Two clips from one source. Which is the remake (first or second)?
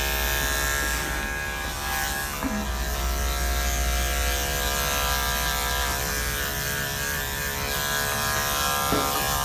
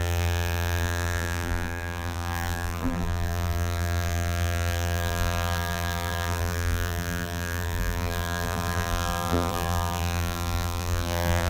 second